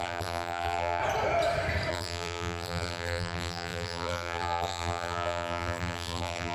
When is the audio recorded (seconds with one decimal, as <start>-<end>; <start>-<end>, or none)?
1.0-1.9